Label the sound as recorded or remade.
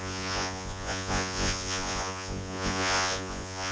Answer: remade